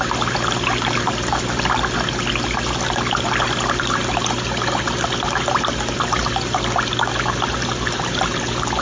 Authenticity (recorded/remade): recorded